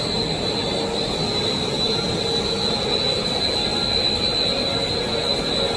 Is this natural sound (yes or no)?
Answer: yes